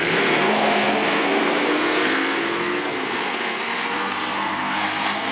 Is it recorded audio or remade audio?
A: remade